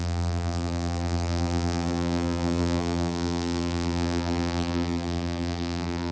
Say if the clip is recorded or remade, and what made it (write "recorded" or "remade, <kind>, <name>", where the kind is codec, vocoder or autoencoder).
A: remade, vocoder, BigVGAN v2